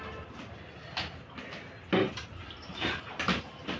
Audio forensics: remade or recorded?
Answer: recorded